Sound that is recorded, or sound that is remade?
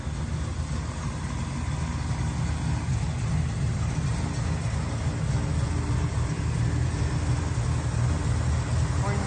recorded